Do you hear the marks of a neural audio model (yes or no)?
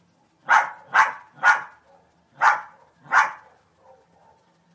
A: no